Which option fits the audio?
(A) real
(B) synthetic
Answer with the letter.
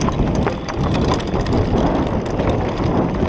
A